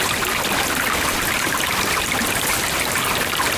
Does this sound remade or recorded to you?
recorded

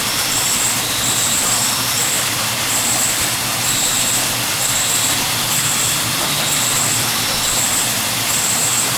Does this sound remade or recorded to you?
recorded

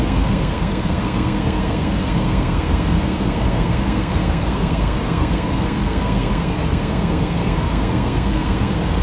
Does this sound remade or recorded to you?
remade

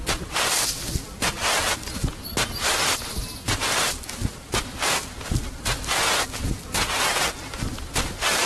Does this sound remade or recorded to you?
recorded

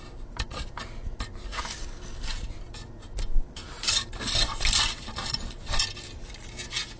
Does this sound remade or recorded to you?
recorded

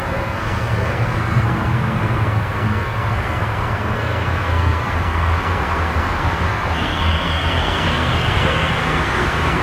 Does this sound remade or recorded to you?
remade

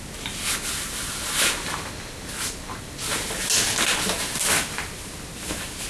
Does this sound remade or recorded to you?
recorded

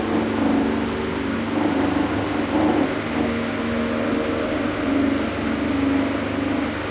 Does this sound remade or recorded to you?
recorded